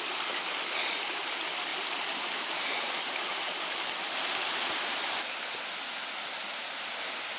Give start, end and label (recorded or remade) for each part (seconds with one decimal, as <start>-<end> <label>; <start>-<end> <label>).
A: 0.0-1.7 recorded; 1.7-3.7 remade; 3.7-7.4 recorded